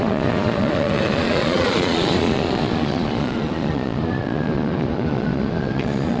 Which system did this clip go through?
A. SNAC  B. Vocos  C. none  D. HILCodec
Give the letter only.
B